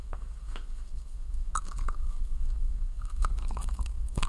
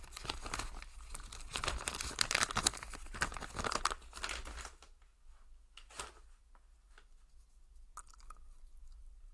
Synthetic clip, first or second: first